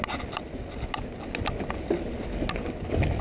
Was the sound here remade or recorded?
recorded